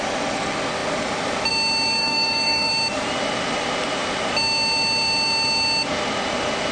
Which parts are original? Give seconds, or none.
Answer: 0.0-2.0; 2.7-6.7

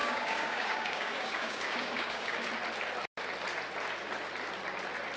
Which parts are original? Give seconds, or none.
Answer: 2.5-5.2

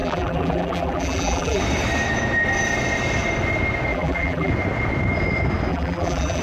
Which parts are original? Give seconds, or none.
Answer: 1.6-3.9; 4.5-5.7

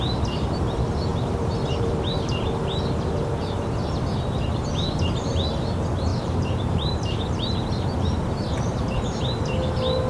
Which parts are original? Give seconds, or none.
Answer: 0.0-1.1; 2.6-6.1; 9.2-10.1

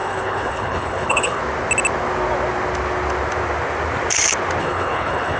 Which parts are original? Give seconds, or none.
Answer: 1.4-4.6

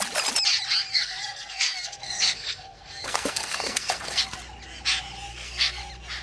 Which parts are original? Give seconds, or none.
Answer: 0.0-0.9; 4.2-5.3; 5.8-6.2

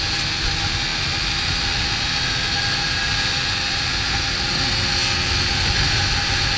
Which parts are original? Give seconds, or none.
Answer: 0.0-6.6